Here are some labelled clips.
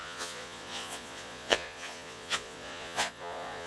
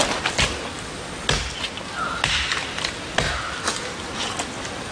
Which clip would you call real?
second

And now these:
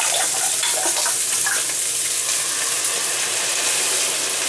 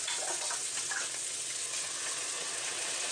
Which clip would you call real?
first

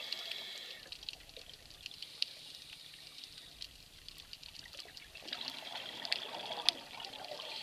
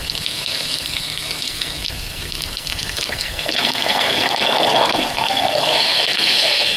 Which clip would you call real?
first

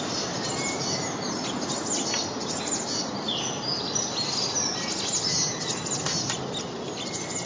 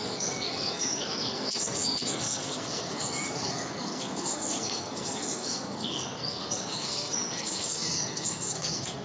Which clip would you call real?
first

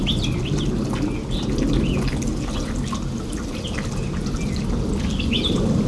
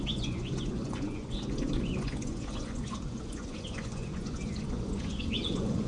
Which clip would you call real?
first